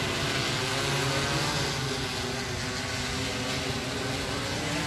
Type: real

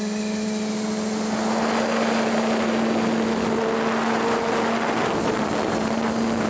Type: real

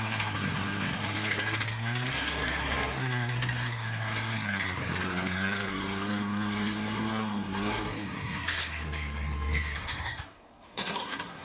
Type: fake